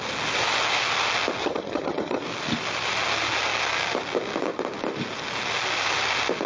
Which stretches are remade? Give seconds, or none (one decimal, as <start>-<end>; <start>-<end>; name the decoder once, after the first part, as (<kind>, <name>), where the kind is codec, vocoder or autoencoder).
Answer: 1.4-2.2 (vocoder, HiFi-GAN)